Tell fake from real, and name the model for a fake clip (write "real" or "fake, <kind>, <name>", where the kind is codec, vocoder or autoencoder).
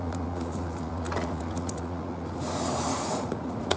fake, vocoder, Vocos